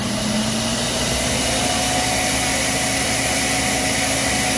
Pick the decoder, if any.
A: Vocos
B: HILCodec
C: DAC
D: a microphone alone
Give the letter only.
D